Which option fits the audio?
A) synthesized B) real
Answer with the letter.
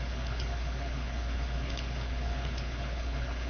A